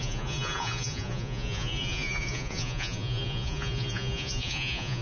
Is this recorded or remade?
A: remade